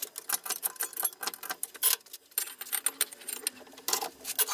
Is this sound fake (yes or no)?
no